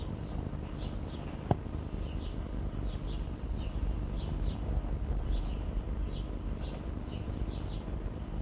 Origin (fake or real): real